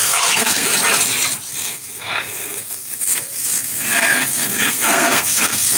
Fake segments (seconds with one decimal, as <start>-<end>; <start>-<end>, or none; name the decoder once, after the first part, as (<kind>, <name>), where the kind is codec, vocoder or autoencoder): 0.0-0.7 (codec, SNAC); 1.5-5.8